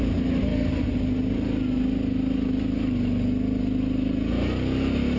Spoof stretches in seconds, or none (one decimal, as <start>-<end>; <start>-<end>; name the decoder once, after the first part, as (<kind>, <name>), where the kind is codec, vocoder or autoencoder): none